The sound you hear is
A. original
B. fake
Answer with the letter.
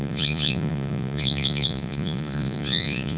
B